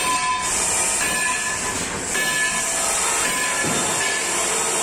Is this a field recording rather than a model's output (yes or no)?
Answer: yes